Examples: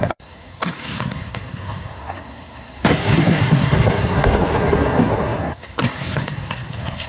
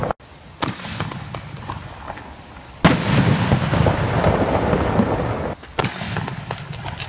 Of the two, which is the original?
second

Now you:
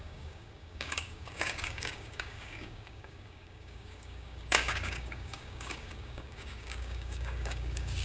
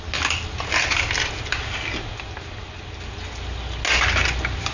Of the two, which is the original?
second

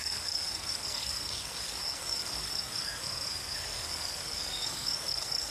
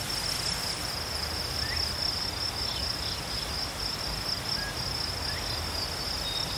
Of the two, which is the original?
second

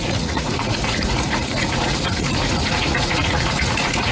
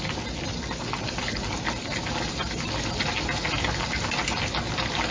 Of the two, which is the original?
second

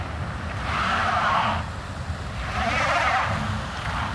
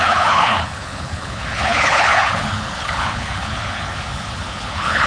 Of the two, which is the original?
first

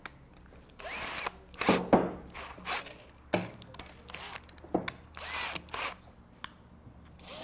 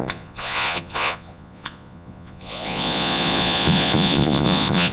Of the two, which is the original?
first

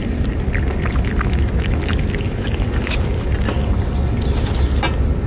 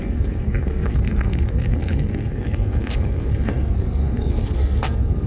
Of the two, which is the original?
first